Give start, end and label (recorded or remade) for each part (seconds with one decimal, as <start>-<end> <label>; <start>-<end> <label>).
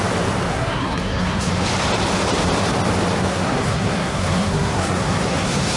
0.0-0.5 recorded; 0.5-1.5 remade; 1.5-3.2 recorded; 3.2-5.8 remade